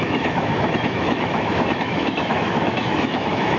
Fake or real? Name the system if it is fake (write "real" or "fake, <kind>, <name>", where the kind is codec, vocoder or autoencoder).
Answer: fake, autoencoder, DAC-VAE